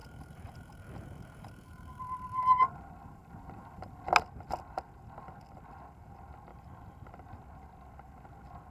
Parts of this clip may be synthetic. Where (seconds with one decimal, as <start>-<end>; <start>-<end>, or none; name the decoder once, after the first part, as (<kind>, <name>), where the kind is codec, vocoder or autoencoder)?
0.0-2.0 (vocoder, BigVGAN v2); 6.5-7.1